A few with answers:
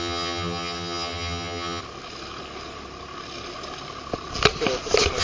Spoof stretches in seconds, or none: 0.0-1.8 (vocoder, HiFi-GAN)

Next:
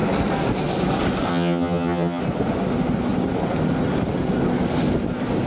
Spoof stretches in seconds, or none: 1.3-2.2 (vocoder, HiFi-GAN)

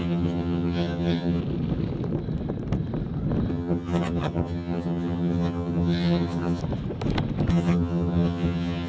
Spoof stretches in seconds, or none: 0.0-1.4 (vocoder, HiFi-GAN); 3.5-6.6; 7.5-8.9

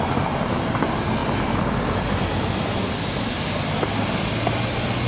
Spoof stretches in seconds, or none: none

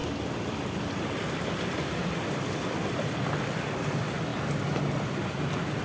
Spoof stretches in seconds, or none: none

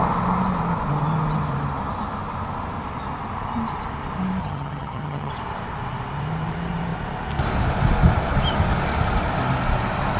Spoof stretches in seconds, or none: 4.4-5.3 (vocoder, HiFi-GAN)

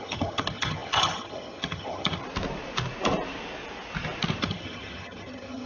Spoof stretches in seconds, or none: 0.0-2.2 (vocoder, HiFi-GAN); 4.4-5.7

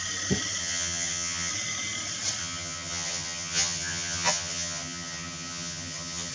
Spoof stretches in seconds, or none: 0.6-1.5 (vocoder, HiFi-GAN); 2.4-6.3